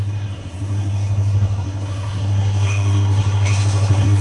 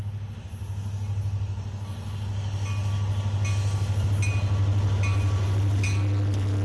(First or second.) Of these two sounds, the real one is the second